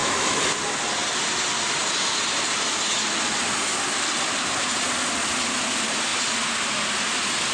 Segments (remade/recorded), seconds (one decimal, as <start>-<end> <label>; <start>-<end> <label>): 0.0-0.5 remade; 0.5-7.5 recorded